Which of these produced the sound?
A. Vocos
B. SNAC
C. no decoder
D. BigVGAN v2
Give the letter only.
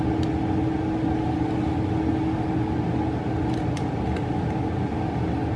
C